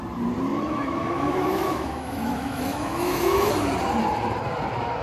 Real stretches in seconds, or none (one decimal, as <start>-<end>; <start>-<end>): 0.0-0.5; 3.5-5.0